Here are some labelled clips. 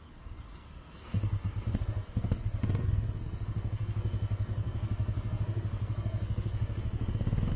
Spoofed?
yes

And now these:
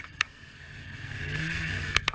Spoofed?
yes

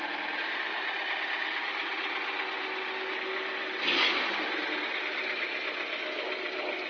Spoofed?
no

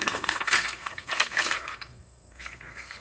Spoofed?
yes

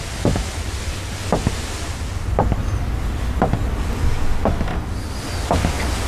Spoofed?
no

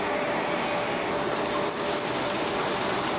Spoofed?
no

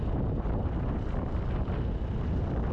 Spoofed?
no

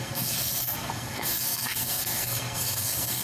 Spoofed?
yes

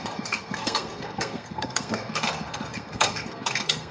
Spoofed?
yes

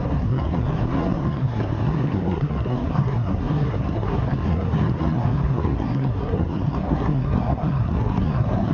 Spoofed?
yes